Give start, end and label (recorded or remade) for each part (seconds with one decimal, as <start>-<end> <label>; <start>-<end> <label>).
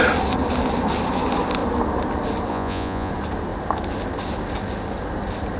0.0-2.5 recorded; 2.5-3.1 remade; 3.1-5.6 recorded